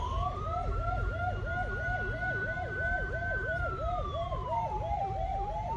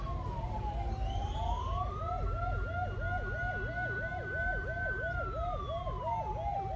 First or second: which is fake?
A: first